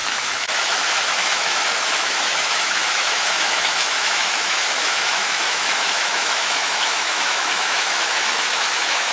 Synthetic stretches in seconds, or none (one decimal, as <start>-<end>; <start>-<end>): 0.0-9.1